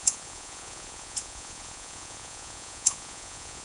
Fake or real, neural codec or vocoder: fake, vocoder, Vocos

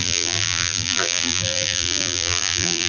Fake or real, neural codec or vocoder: fake, vocoder, BigVGAN v2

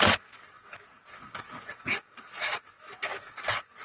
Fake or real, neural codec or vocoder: fake, codec, DAC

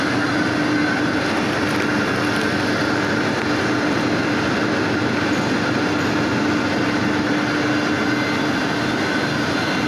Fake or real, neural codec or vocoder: real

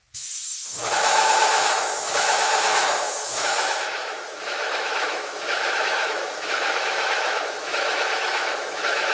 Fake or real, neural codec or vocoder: fake, autoencoder, DAC-VAE